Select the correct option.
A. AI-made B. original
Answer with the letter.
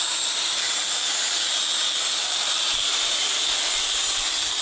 A